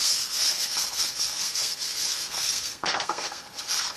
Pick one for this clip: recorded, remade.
remade